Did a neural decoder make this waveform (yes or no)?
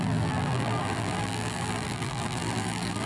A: yes